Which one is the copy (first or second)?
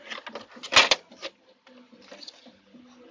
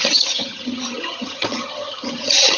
second